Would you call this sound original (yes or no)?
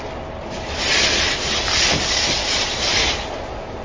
yes